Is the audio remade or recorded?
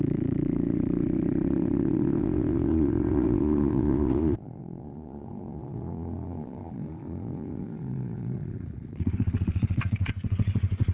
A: remade